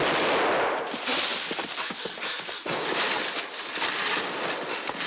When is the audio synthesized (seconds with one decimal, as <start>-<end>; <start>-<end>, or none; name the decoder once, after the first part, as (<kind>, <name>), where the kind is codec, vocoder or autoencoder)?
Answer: none